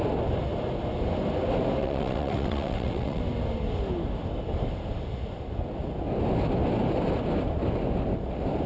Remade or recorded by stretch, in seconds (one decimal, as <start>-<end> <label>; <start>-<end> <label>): 0.0-1.8 recorded; 1.8-3.2 remade; 3.2-8.7 recorded